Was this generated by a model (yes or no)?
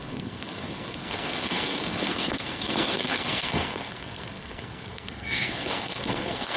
yes